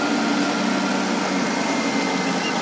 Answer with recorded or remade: recorded